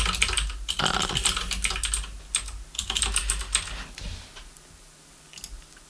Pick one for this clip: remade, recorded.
recorded